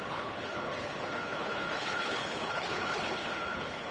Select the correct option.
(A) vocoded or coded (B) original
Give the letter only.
A